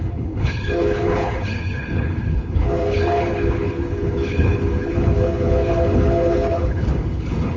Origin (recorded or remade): remade